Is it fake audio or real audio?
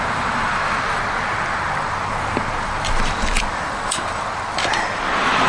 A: fake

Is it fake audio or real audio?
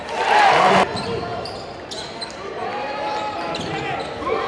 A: real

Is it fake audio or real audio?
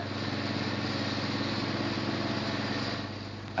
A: real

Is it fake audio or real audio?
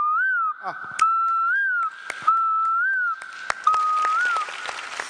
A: real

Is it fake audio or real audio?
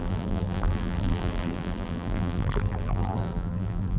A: fake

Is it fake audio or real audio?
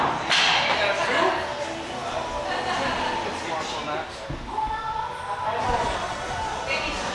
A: real